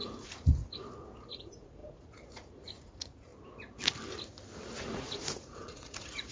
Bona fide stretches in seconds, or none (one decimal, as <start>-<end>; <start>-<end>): 0.6-1.3; 3.3-4.8